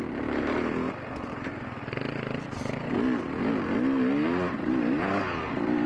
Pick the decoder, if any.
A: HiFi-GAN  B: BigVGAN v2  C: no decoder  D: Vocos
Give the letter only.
C